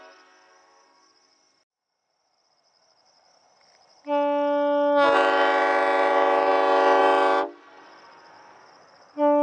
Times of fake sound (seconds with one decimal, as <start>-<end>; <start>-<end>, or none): none